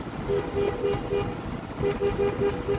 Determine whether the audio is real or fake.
real